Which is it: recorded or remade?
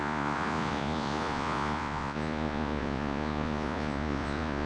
remade